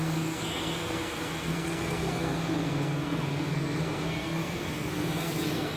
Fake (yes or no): yes